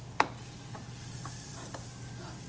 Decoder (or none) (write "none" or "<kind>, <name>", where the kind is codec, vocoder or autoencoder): none